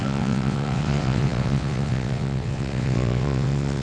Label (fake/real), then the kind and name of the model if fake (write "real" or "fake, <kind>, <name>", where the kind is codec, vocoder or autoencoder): fake, vocoder, WaveNeXt